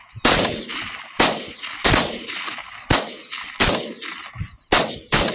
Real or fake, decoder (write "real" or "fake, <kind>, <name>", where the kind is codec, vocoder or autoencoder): real